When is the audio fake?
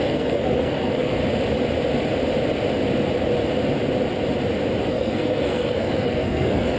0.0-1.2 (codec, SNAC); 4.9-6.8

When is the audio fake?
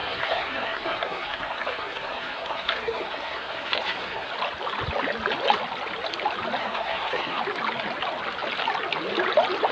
0.0-4.3 (codec, SNAC); 6.6-7.4